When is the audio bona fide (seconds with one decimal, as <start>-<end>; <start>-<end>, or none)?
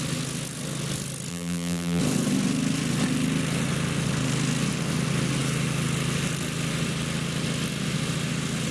0.0-1.3; 2.0-8.7